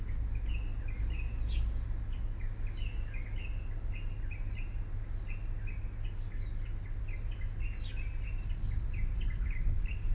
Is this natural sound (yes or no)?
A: yes